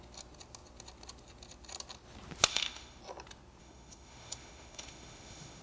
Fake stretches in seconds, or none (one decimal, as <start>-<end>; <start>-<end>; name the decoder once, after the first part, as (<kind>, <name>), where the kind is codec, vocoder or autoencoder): 2.5-3.0 (autoencoder, DAC-VAE); 3.6-5.6